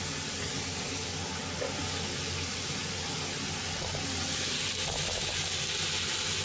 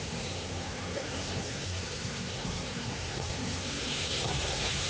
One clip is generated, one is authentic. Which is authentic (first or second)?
first